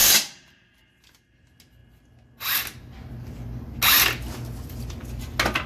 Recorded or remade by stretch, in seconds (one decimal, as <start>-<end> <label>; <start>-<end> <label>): 0.0-0.8 remade; 0.8-5.7 recorded